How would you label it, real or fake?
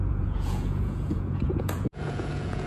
fake